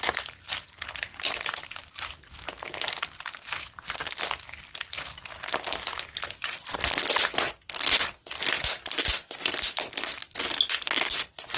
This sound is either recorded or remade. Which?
recorded